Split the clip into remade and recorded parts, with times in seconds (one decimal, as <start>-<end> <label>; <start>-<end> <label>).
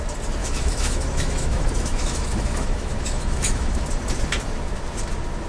0.0-0.4 recorded; 0.4-3.7 remade; 3.7-5.5 recorded